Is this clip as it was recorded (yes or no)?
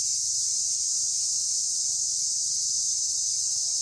yes